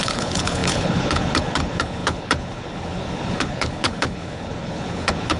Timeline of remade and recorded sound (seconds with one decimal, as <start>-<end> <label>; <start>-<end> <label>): 0.0-5.4 remade